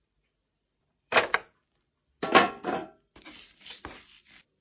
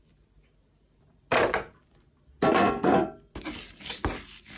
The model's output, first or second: first